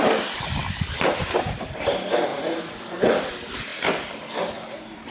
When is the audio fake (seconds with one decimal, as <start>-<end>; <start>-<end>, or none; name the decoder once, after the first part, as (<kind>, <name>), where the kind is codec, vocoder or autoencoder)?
none